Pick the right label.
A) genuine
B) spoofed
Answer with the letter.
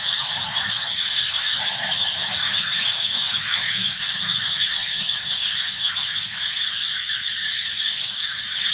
B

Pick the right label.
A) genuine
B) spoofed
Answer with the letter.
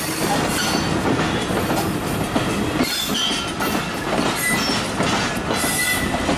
A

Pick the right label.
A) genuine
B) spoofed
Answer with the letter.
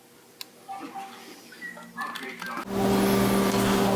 A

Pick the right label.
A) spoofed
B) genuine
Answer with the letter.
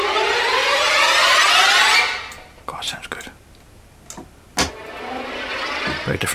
B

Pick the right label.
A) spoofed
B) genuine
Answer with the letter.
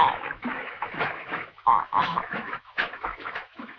A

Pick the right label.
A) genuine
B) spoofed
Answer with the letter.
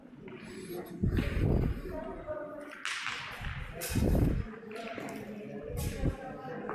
A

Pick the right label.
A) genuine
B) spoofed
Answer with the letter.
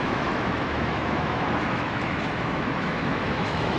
B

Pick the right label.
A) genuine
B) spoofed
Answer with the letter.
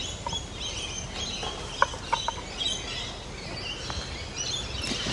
A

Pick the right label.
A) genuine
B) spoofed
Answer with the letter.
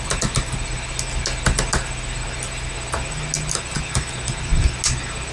A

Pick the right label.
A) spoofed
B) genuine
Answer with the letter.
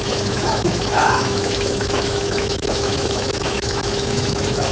A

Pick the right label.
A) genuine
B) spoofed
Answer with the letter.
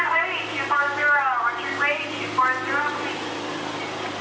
A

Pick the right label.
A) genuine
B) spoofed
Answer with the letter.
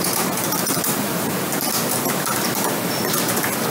A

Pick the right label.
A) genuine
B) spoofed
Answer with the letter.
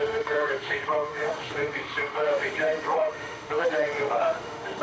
B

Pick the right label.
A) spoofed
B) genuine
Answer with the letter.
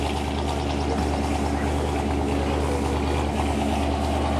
B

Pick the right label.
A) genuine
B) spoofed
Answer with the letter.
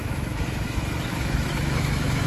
B